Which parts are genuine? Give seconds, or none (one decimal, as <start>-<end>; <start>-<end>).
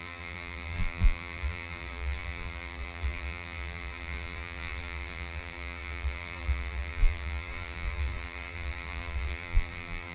none